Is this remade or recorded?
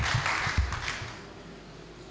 recorded